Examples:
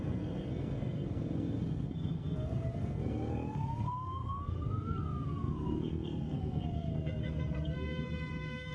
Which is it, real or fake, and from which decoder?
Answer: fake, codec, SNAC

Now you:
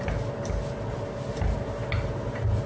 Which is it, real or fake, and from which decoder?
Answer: real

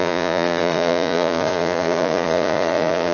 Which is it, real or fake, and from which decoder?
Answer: fake, vocoder, Vocos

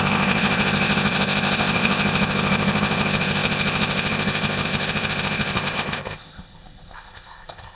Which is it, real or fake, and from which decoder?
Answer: fake, codec, ZipCodec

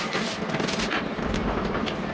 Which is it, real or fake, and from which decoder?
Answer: real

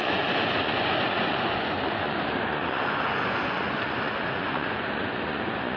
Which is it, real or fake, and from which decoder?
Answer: fake, vocoder, Vocos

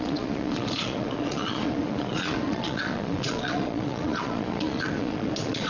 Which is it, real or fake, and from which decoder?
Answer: fake, vocoder, Vocos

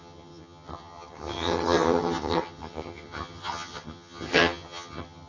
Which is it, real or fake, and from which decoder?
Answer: fake, vocoder, HiFi-GAN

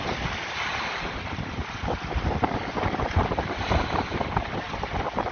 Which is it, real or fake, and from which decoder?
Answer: fake, vocoder, BigVGAN v2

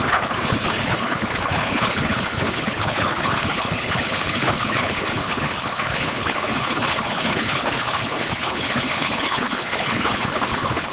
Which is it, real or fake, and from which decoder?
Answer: fake, codec, HILCodec